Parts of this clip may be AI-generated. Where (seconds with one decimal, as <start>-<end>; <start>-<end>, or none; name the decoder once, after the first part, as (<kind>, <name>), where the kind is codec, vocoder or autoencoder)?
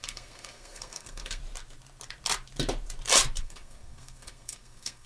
0.0-1.4 (codec, SNAC); 3.4-5.1